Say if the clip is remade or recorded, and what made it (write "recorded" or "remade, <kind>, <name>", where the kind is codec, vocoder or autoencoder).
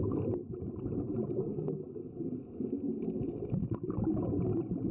recorded